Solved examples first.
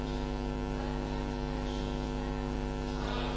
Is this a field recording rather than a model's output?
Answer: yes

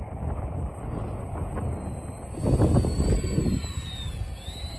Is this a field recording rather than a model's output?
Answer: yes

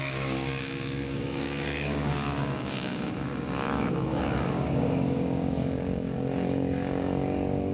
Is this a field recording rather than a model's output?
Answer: no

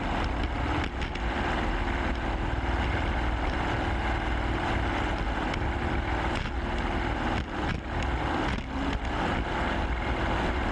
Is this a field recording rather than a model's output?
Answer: yes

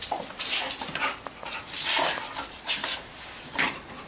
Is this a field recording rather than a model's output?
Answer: yes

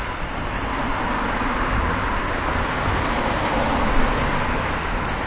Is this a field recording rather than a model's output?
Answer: yes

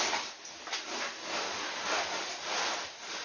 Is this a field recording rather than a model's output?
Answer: yes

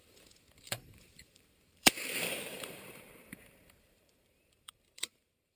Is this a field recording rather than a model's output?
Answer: no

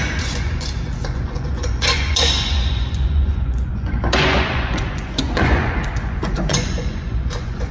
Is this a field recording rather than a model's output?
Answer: no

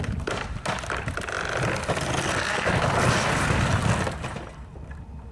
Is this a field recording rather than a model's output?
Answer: yes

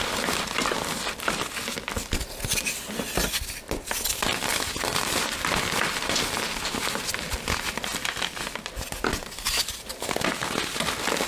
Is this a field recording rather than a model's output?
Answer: yes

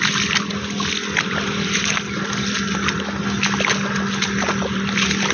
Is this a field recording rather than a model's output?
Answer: yes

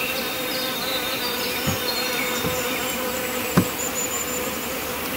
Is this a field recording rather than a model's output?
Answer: no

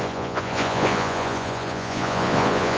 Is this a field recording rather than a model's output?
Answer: no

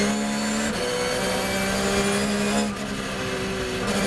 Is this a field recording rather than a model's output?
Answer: yes